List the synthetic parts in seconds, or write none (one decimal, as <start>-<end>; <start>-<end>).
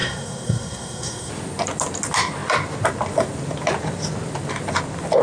0.0-1.3